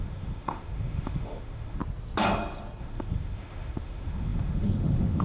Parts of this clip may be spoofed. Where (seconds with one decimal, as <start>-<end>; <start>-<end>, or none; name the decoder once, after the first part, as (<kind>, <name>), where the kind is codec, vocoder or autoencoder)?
0.0-1.8 (autoencoder, DAC-VAE); 2.8-5.2